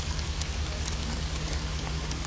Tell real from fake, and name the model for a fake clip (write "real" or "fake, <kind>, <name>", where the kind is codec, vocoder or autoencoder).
fake, codec, DAC